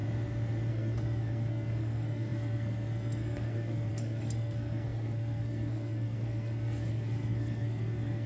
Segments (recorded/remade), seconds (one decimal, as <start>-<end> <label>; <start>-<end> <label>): 0.0-0.7 recorded; 0.7-8.3 remade